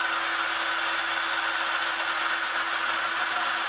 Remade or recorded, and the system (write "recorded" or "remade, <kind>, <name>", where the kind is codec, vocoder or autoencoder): recorded